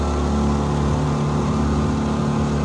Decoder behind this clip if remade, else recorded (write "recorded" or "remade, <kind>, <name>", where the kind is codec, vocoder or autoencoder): recorded